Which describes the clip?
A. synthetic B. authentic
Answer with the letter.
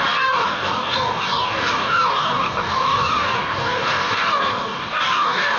A